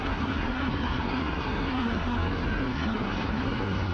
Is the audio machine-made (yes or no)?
yes